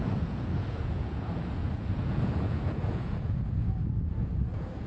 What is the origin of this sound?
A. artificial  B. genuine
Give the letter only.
A